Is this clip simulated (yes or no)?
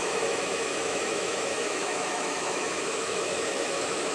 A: yes